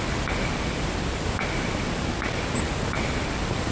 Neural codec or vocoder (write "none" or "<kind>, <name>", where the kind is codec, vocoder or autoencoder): none